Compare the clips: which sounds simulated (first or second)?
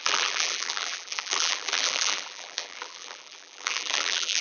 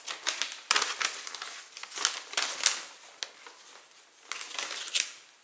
first